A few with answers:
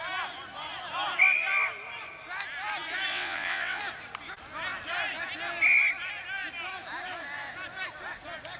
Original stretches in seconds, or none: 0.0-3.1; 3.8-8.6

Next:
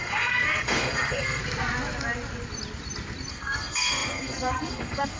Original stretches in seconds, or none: 1.4-3.3

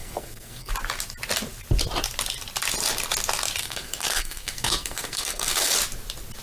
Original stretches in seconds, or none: 0.7-3.6; 5.7-6.4

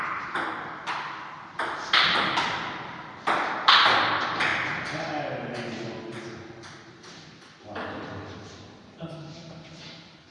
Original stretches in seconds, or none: 4.5-6.9

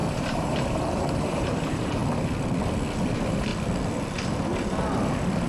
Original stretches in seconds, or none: 2.0-3.0; 3.5-5.5

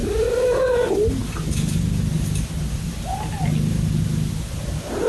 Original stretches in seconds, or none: 0.0-5.1

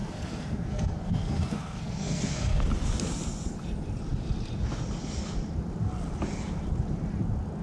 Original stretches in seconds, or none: 2.6-7.6

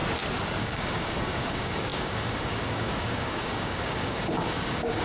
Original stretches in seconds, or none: 0.0-0.6